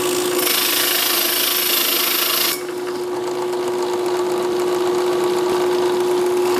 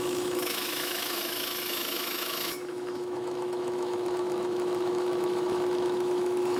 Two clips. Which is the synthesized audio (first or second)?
second